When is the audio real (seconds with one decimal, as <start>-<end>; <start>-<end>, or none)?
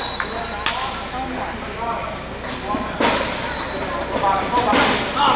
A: 0.0-5.4